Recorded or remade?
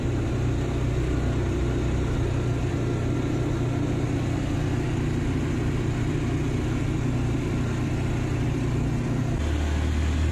recorded